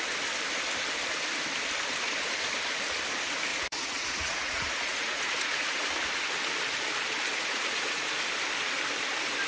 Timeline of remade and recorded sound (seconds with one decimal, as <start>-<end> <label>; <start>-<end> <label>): 0.0-3.5 recorded; 3.5-5.9 remade; 5.9-7.3 recorded; 7.3-8.1 remade; 8.1-9.5 recorded